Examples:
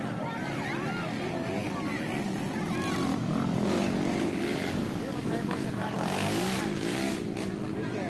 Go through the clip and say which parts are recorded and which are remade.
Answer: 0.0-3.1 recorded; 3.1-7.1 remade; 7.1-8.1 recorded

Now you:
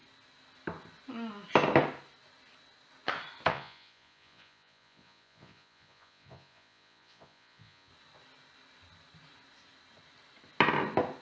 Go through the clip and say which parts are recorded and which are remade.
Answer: 0.0-3.5 recorded; 3.5-7.9 remade; 7.9-11.2 recorded

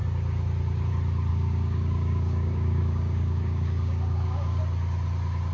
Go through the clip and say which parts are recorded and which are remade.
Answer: 0.0-1.3 recorded; 1.3-4.6 remade; 4.6-5.5 recorded

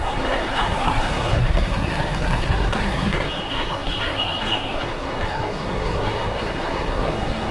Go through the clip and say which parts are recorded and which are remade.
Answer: 0.0-7.5 remade